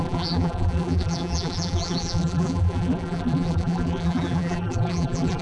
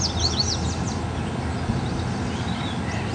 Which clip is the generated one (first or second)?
first